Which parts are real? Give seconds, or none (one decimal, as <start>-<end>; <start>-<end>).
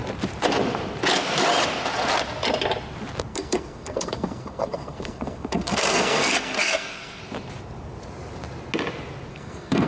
0.0-3.3; 7.2-9.3